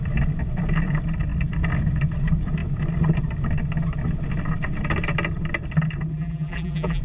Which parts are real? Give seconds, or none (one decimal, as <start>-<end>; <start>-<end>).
0.0-6.1